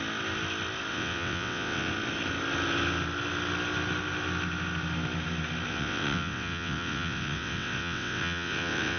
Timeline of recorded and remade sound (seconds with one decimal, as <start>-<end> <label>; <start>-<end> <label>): 0.0-0.9 recorded; 0.9-1.9 remade; 1.9-5.7 recorded; 5.7-9.0 remade